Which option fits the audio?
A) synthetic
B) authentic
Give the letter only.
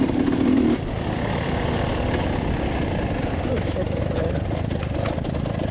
B